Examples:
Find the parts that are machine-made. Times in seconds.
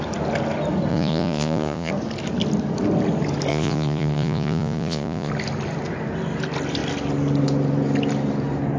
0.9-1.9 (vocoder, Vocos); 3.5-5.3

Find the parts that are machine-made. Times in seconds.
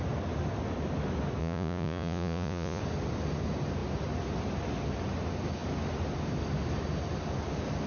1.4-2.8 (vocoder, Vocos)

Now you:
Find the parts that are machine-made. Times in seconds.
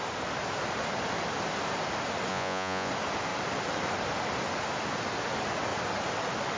2.3-2.9 (vocoder, Vocos)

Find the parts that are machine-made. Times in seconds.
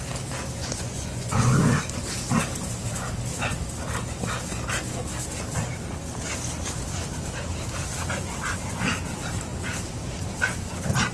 0.6-1.8 (vocoder, Vocos)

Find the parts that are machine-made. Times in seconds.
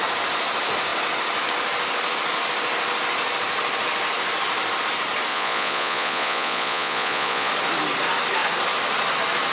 5.3-7.5 (vocoder, Vocos)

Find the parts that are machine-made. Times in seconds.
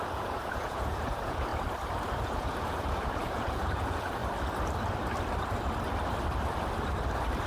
0.0-1.5 (vocoder, Vocos); 2.1-4.2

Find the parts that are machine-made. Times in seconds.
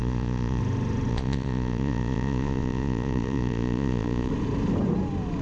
0.0-0.6 (vocoder, Vocos); 1.1-4.3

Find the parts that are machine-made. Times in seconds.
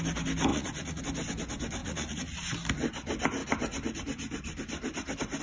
0.5-1.0 (vocoder, Vocos); 1.8-2.5